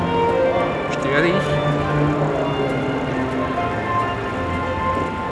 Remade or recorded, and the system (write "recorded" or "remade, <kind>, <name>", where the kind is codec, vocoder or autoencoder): recorded